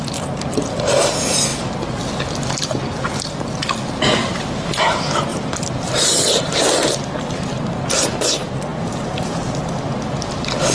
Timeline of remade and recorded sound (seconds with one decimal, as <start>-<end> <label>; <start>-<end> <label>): 0.0-5.3 recorded; 5.3-6.7 remade; 6.7-10.7 recorded